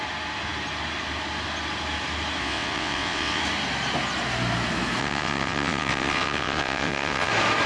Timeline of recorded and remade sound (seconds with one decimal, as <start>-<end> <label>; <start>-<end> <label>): 0.0-2.4 recorded; 2.4-3.4 remade; 3.4-5.0 recorded; 5.0-7.3 remade; 7.3-7.7 recorded